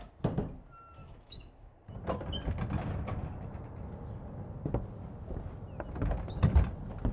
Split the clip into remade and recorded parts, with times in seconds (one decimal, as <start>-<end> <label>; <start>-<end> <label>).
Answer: 0.0-1.0 recorded; 1.0-1.7 remade; 1.7-7.1 recorded